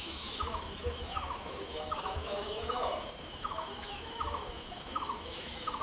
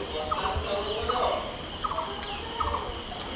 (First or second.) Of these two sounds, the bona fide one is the second